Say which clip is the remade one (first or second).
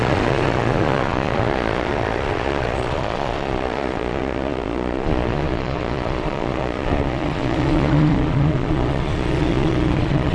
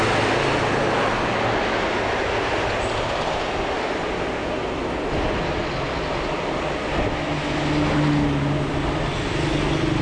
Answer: first